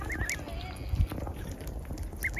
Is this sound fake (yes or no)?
no